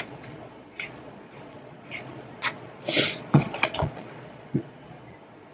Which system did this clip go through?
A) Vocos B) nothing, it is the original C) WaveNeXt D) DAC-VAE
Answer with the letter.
A